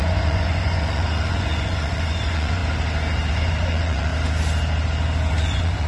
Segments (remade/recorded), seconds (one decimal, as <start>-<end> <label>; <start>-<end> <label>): 0.0-2.6 remade; 2.6-3.3 recorded; 3.3-4.1 remade; 4.1-5.3 recorded; 5.3-5.9 remade